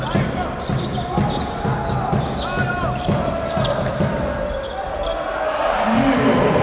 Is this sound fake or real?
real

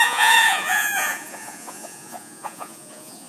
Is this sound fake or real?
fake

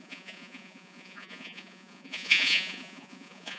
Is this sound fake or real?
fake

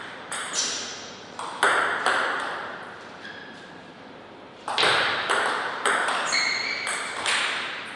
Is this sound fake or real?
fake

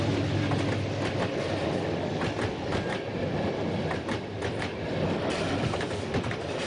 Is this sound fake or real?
real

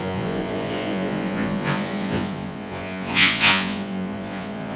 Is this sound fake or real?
fake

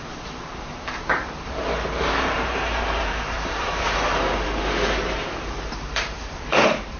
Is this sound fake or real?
fake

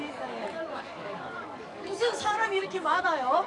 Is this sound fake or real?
fake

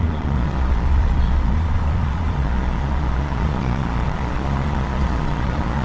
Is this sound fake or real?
fake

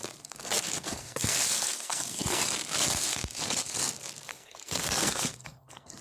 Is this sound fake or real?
fake